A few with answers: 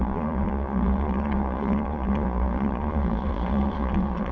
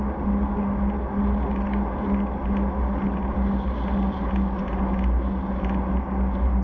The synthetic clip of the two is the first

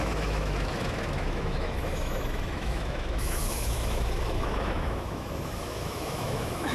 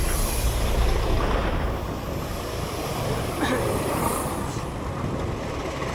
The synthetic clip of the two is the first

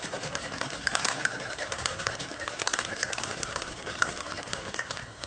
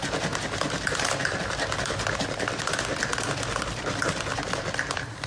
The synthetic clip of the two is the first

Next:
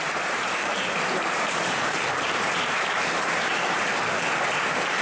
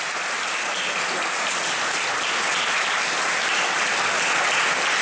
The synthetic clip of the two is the first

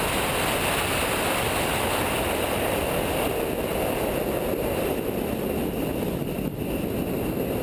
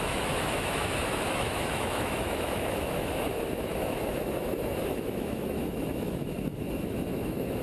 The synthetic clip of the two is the second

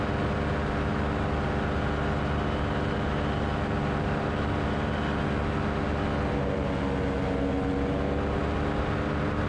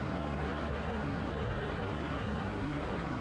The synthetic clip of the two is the second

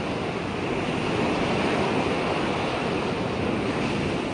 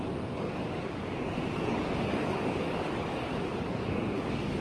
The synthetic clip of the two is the second